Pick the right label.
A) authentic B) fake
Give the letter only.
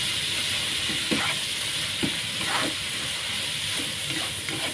A